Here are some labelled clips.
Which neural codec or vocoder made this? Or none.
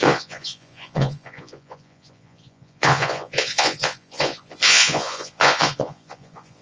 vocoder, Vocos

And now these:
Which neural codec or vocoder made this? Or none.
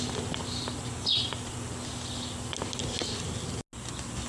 none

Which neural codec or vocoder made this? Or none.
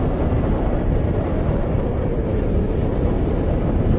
vocoder, BigVGAN v2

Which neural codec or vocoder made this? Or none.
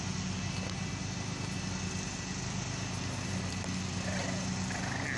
none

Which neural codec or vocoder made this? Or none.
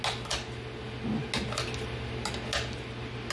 none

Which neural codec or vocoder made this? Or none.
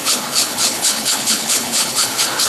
codec, HILCodec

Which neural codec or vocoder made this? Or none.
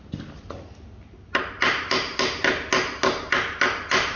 none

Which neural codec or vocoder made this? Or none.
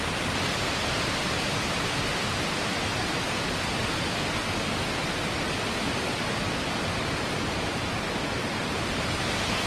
none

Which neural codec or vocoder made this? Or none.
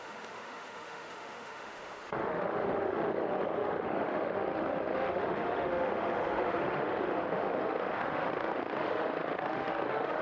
autoencoder, DAC-VAE